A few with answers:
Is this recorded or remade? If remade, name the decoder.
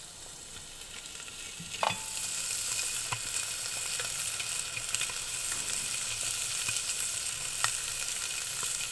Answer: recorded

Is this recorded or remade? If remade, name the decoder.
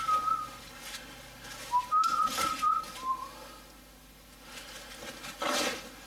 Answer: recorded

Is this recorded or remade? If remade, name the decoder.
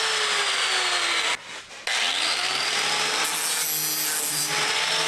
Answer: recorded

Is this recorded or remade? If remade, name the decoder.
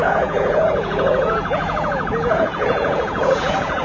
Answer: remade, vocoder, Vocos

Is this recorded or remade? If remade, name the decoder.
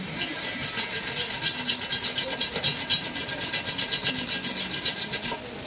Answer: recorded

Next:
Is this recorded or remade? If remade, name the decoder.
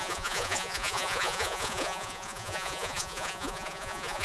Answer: remade, vocoder, Vocos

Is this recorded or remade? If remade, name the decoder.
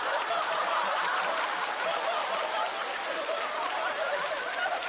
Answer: recorded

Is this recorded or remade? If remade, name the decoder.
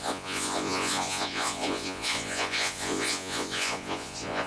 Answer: remade, vocoder, Vocos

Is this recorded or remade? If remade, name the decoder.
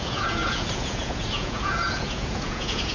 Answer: remade, vocoder, Vocos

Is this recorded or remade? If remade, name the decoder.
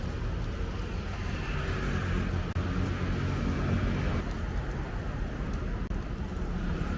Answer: recorded